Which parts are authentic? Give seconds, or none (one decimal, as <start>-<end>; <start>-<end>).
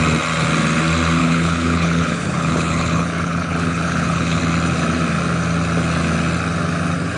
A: 0.0-1.2; 4.4-7.2